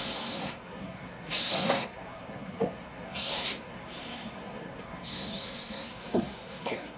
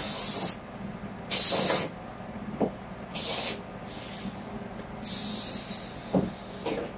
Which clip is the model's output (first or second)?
first